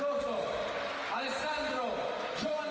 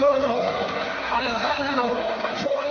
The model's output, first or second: second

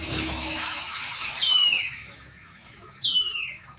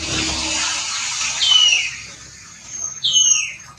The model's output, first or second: first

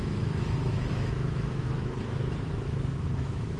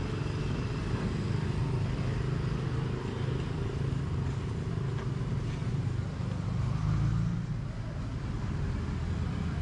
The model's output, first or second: first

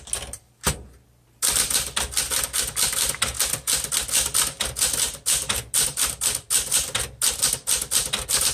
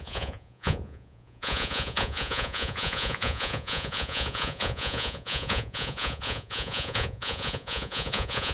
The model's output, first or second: second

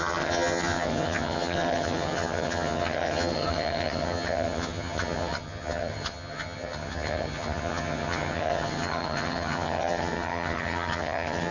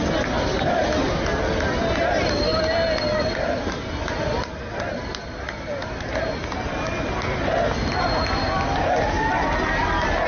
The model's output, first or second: first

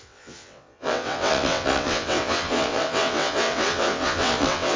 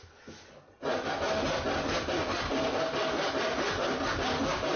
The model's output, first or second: first